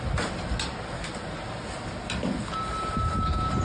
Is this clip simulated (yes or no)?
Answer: no